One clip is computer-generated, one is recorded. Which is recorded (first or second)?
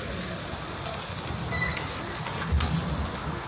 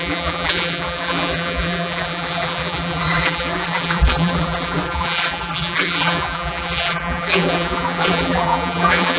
first